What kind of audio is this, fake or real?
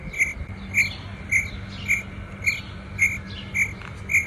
real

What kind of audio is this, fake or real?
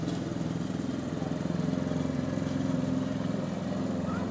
fake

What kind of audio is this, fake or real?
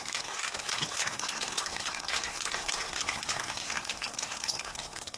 fake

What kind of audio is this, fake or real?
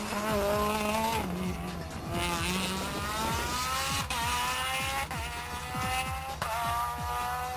real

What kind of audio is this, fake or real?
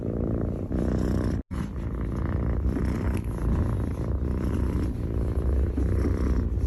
real